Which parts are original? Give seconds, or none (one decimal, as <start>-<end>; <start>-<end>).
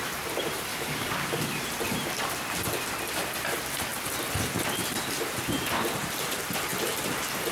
0.0-0.7; 1.6-7.5